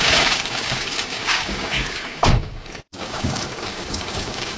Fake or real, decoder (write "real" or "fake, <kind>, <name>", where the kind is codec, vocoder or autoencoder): fake, codec, DAC